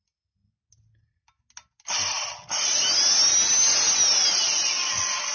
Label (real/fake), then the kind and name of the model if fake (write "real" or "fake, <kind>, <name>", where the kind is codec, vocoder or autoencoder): real